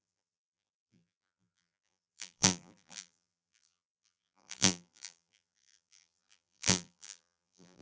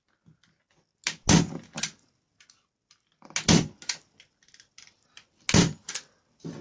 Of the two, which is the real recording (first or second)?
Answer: second